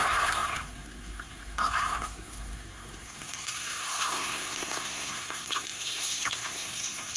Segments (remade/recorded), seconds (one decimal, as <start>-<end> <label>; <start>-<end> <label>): 0.0-7.2 remade